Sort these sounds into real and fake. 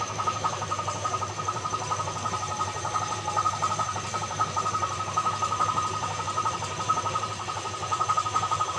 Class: fake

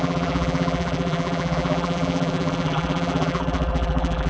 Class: fake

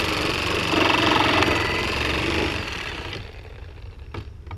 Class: fake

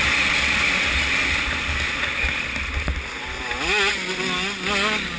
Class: real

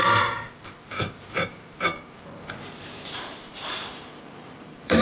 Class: fake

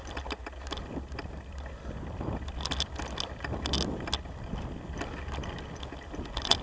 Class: real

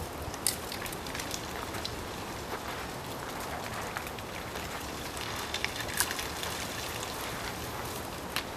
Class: real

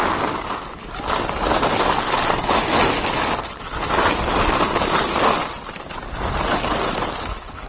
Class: real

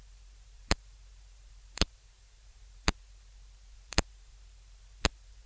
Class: fake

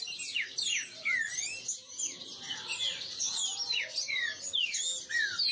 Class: real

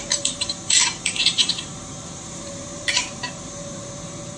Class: fake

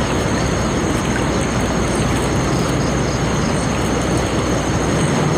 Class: real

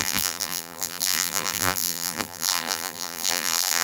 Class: fake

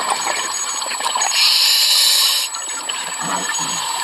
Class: fake